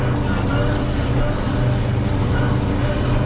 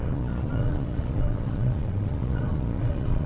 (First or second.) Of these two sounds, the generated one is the second